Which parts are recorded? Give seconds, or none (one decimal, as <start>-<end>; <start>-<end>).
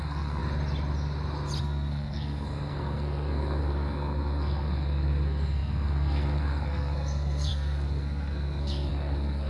0.4-1.6